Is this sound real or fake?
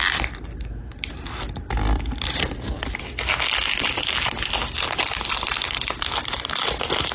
real